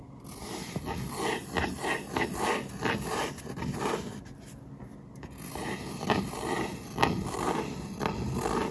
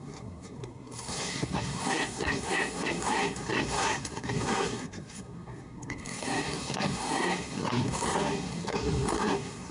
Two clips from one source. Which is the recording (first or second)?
first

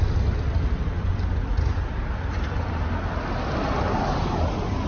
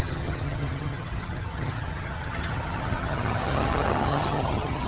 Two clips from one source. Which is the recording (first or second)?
first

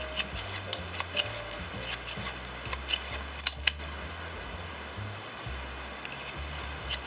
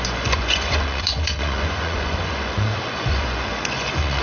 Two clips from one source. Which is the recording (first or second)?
first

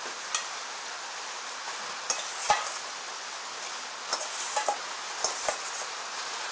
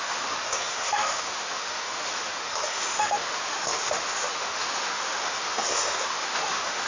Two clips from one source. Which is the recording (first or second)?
first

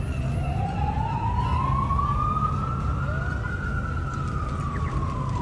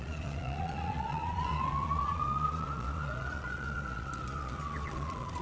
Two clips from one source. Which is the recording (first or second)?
first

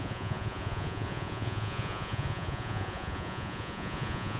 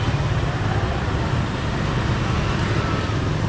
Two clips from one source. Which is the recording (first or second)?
second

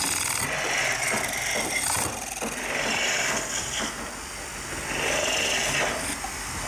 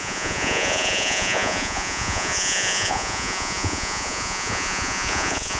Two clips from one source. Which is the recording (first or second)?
first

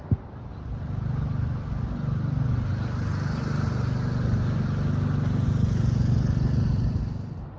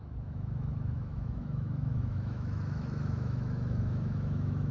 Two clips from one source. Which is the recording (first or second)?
first